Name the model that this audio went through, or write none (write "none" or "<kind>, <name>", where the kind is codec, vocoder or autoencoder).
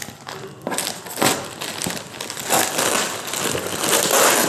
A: none